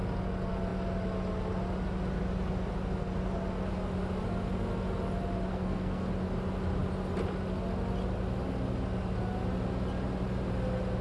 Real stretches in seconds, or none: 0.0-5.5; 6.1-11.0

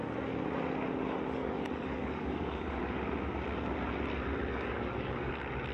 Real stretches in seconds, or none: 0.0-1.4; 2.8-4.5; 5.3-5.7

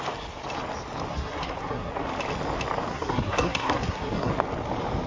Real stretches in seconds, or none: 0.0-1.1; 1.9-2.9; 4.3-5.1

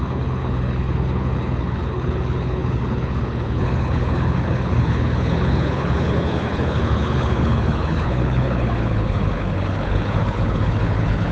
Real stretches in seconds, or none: none

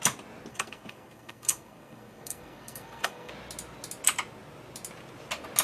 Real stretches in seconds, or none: 0.0-0.5; 3.3-5.6

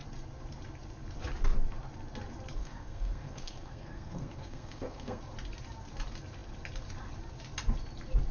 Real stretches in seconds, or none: 0.0-2.6; 5.2-8.3